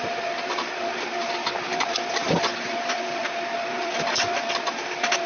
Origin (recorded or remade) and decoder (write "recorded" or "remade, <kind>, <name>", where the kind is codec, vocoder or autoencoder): remade, vocoder, BigVGAN v2